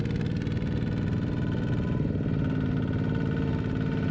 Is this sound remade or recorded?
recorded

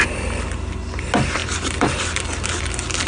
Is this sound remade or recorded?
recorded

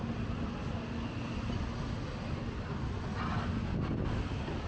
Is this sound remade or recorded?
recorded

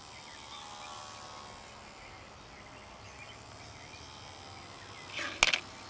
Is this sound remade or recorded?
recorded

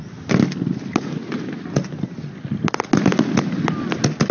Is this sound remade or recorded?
recorded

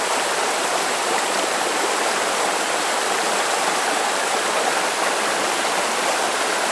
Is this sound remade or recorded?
remade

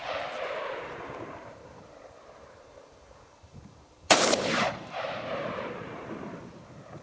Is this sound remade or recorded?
remade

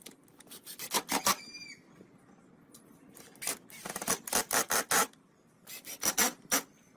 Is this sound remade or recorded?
recorded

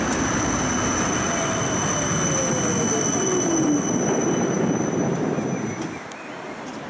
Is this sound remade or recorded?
recorded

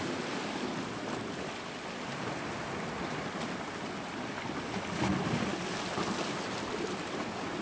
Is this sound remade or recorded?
recorded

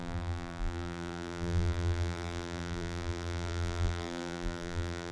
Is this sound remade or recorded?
remade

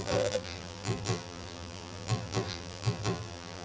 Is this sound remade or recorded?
remade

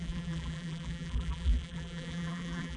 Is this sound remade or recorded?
remade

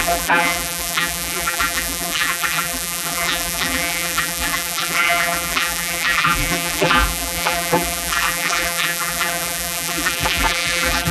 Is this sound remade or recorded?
remade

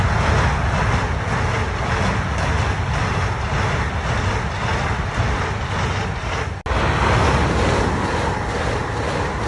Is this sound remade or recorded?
recorded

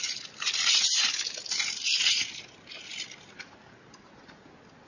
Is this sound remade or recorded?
recorded